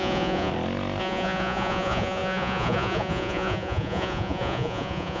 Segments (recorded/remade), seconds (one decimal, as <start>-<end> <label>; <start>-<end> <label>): 0.0-0.5 remade; 0.5-1.0 recorded; 1.0-5.2 remade